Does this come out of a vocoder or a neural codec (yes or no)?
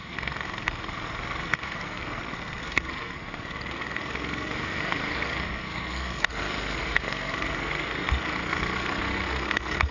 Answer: yes